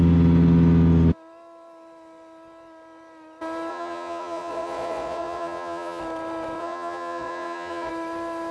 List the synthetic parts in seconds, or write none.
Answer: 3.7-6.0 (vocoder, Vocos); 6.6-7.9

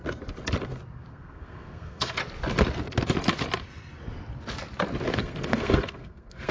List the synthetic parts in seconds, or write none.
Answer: 1.1-2.2 (codec, SNAC); 5.1-6.5

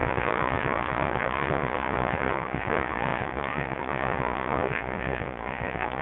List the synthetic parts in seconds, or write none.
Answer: 0.0-6.0 (vocoder, Vocos)

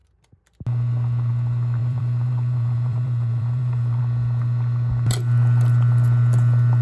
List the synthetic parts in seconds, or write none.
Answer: 1.8-4.0 (vocoder, BigVGAN v2)